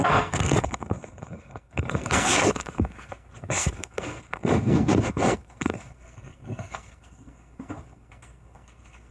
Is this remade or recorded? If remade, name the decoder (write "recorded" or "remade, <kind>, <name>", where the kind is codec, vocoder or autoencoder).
remade, codec, SNAC